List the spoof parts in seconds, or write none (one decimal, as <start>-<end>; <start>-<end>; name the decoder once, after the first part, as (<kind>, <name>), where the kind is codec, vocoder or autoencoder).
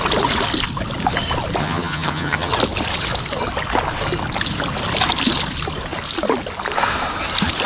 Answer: 1.6-2.5 (vocoder, HiFi-GAN)